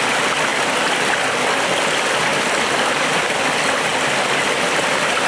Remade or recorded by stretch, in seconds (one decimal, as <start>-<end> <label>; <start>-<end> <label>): 0.0-5.3 recorded